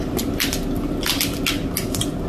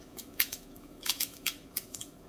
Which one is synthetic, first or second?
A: second